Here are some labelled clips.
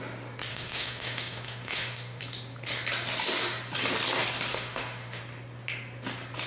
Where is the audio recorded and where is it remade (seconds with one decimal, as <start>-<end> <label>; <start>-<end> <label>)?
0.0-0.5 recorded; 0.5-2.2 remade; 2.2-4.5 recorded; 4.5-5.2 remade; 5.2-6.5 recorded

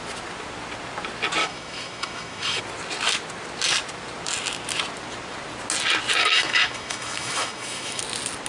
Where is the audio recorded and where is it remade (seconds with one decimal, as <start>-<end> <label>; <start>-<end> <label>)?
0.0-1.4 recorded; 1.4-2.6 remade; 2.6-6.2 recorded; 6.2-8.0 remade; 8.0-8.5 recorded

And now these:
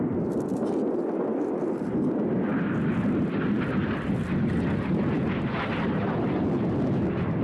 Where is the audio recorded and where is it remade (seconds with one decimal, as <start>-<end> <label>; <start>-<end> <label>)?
0.0-7.4 recorded

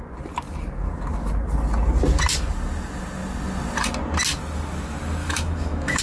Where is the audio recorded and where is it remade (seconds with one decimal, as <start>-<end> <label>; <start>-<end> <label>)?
0.0-5.2 recorded; 5.2-6.0 remade

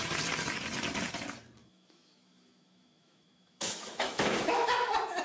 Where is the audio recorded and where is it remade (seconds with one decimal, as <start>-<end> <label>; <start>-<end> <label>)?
0.0-1.6 recorded; 1.6-4.7 remade; 4.7-5.2 recorded